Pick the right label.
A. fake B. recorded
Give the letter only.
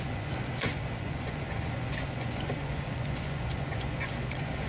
A